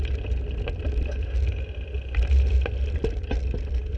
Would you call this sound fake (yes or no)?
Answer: no